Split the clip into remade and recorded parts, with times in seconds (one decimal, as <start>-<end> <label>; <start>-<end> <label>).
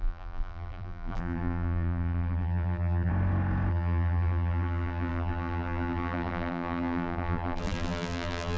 0.0-3.1 remade; 3.1-3.7 recorded; 3.7-8.6 remade